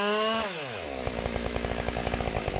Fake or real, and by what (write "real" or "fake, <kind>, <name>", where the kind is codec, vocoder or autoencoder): fake, autoencoder, DAC-VAE